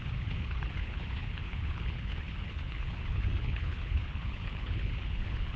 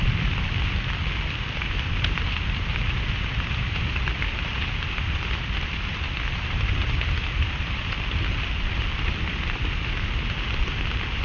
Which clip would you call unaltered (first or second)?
second